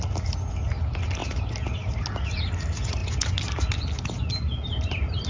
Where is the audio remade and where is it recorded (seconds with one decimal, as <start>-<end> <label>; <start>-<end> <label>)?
0.0-5.3 recorded